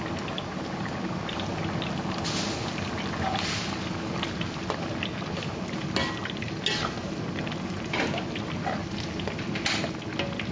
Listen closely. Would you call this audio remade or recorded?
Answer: recorded